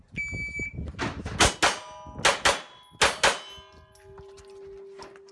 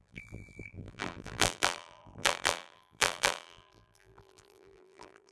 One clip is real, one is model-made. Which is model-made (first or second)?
second